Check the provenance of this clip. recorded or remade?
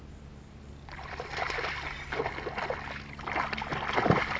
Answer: recorded